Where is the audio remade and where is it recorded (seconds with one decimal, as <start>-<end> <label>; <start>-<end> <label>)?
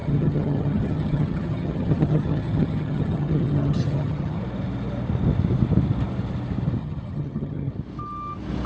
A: 0.0-4.4 remade; 4.4-6.8 recorded; 6.8-7.7 remade; 7.7-8.7 recorded